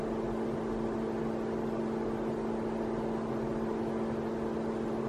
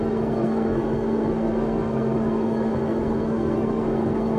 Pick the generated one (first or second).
second